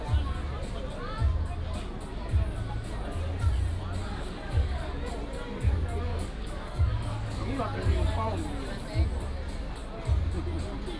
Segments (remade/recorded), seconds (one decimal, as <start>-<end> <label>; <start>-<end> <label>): 0.0-4.0 recorded; 4.0-5.1 remade; 5.1-6.1 recorded; 6.1-7.6 remade; 7.6-11.0 recorded